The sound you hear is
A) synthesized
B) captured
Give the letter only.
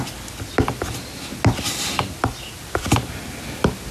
B